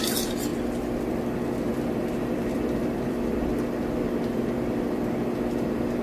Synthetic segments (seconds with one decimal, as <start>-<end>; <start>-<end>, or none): 1.7-3.5